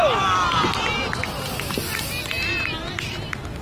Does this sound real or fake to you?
real